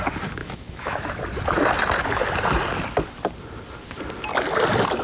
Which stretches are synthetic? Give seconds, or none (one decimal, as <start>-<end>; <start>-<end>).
0.4-1.2